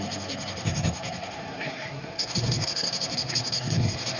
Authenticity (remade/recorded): remade